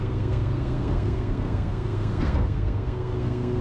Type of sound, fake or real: fake